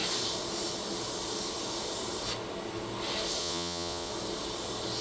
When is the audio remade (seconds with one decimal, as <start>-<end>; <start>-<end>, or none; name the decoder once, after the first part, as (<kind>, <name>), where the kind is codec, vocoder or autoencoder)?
3.4-4.1 (vocoder, Vocos)